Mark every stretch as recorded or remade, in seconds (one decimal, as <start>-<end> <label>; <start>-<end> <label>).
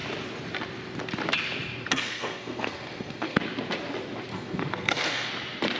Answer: 0.0-2.0 recorded; 2.0-3.4 remade; 3.4-4.3 recorded; 4.3-5.3 remade; 5.3-5.8 recorded